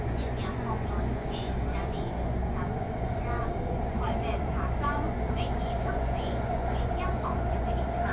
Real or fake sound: fake